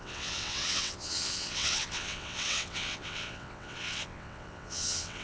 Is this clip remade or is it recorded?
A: remade